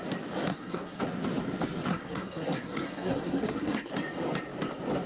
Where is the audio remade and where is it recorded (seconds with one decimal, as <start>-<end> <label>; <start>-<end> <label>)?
0.0-0.5 recorded; 0.5-1.0 remade; 1.0-1.9 recorded; 1.9-3.9 remade; 3.9-5.1 recorded

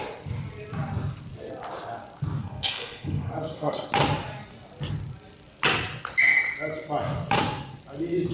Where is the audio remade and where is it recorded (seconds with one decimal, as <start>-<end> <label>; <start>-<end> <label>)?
0.0-2.4 recorded; 2.4-3.9 remade; 3.9-8.3 recorded

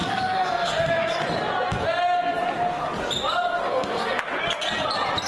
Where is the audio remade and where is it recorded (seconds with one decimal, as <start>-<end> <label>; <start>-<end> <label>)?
0.0-1.1 remade; 1.1-3.6 recorded; 3.6-4.2 remade; 4.2-5.3 recorded

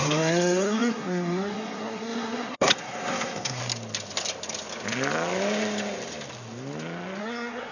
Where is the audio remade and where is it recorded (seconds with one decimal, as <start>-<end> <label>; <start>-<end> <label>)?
0.0-3.6 remade; 3.6-7.2 recorded; 7.2-7.7 remade

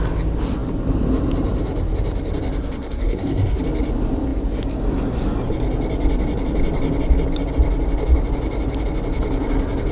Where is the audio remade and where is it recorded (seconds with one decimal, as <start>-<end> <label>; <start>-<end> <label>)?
0.0-2.6 recorded; 2.6-3.6 remade; 3.6-9.9 recorded

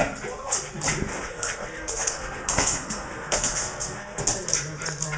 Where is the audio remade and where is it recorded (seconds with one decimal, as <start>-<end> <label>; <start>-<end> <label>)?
0.0-1.1 recorded; 1.1-4.2 remade; 4.2-5.2 recorded

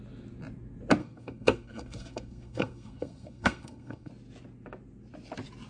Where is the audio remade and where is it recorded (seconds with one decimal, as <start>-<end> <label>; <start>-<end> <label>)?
0.0-1.0 recorded; 1.0-4.1 remade; 4.1-5.7 recorded

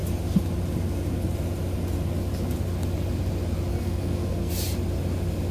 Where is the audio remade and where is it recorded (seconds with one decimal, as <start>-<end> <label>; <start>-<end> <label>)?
0.0-3.7 recorded; 3.7-4.5 remade; 4.5-5.5 recorded